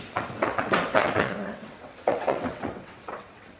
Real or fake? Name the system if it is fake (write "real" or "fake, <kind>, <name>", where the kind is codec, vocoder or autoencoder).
fake, vocoder, WaveNeXt